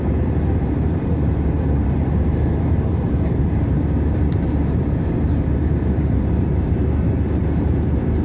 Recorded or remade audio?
remade